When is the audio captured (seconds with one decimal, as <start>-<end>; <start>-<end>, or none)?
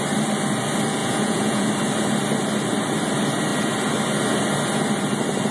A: 0.0-1.0; 1.7-5.5